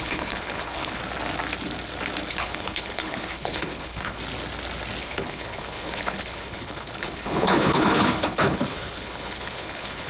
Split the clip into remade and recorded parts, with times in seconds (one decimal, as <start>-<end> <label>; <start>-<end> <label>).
0.0-1.0 remade; 1.0-2.3 recorded; 2.3-4.2 remade; 4.2-5.0 recorded; 5.0-10.1 remade